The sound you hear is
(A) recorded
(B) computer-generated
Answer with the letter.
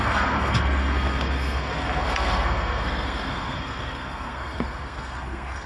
B